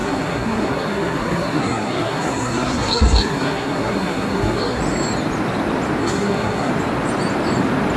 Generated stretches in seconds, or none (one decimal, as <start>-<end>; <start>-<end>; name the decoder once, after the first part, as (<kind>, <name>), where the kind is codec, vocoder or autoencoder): 0.0-4.8 (codec, SNAC); 6.0-6.7